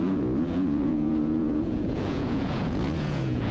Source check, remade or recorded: remade